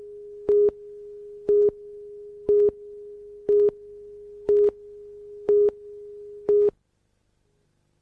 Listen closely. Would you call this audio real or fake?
real